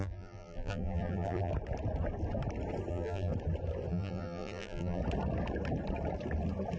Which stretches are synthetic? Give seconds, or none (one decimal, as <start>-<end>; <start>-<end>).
0.0-1.5; 2.9-3.3; 3.9-5.0